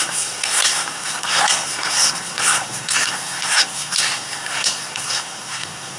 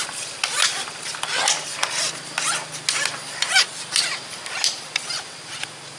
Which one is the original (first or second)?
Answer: second